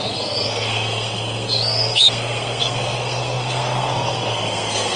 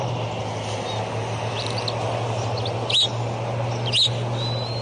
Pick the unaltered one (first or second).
second